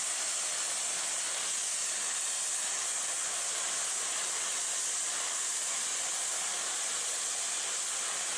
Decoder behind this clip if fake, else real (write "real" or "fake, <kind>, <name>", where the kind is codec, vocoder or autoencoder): real